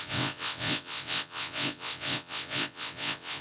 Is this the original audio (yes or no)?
no